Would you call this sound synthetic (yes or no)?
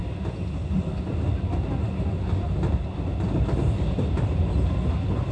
no